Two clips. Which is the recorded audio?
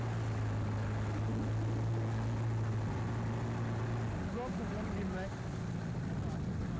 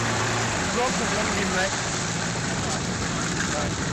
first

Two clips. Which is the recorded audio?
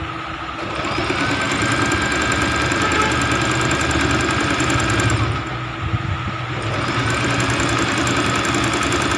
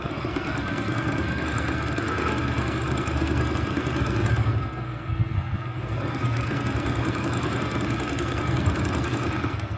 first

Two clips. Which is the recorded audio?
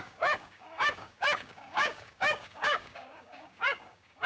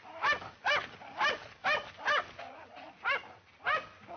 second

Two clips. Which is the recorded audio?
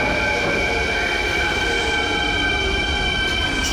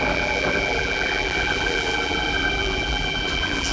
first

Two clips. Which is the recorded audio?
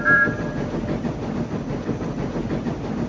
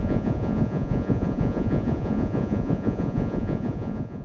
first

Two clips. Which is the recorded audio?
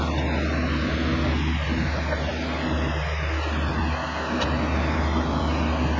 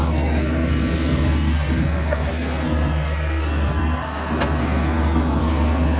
first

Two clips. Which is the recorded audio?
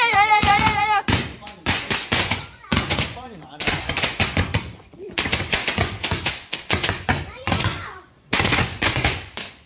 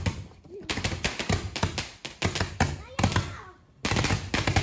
second